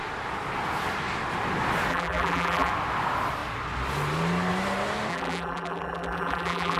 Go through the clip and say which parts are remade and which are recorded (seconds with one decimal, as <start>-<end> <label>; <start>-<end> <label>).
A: 0.0-1.9 recorded; 1.9-2.7 remade; 2.7-5.1 recorded; 5.1-6.8 remade